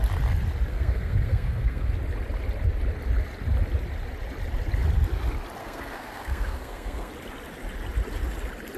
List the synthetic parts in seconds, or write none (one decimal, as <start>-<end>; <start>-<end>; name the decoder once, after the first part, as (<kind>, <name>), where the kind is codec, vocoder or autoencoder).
0.7-1.9 (codec, SNAC); 5.6-7.1